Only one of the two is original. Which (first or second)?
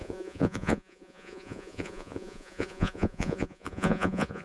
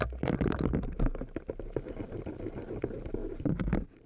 second